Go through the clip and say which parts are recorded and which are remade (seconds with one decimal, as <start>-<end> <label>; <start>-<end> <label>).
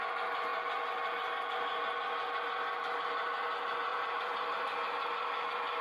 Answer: 0.0-3.9 recorded; 3.9-4.6 remade; 4.6-5.8 recorded